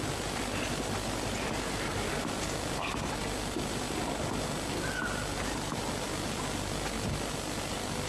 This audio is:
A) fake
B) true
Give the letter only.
B